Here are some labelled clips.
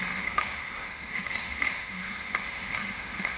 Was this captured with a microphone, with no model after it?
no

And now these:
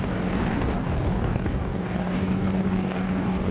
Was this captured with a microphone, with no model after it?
no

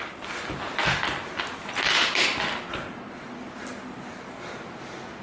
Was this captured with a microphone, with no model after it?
no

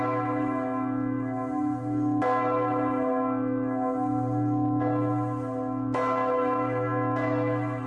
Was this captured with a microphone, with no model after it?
yes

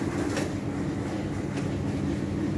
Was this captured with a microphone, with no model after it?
yes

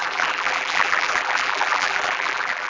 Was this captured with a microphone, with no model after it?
no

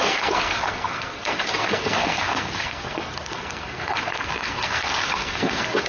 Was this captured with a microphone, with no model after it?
no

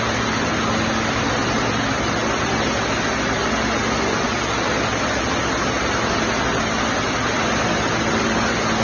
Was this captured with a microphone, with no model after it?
yes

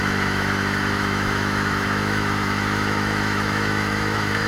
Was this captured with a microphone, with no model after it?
no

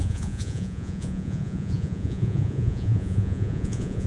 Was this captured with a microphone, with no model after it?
no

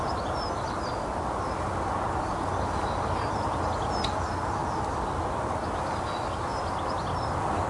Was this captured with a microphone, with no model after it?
yes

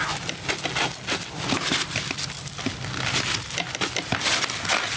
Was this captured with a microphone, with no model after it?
yes